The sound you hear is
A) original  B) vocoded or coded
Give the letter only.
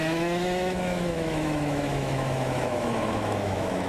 B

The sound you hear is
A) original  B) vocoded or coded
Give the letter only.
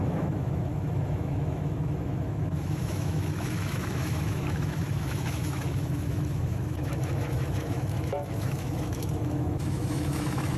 B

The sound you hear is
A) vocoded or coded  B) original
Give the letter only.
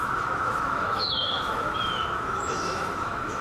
A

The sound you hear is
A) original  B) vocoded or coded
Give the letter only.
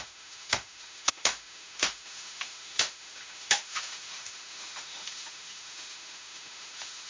B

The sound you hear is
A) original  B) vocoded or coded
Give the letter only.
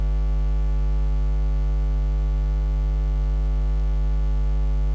A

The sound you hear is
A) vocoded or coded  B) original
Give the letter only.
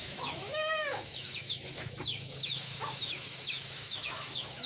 A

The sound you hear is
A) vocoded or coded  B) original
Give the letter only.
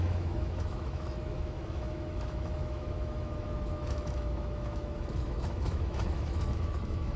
A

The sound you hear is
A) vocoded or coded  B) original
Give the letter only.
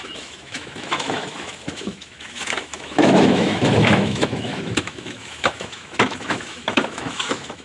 A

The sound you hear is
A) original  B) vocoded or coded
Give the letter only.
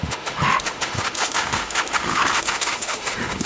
B